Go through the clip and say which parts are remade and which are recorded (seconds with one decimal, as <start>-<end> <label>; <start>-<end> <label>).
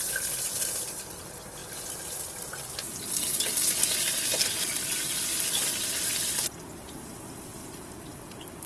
0.0-1.6 remade; 1.6-4.4 recorded; 4.4-8.7 remade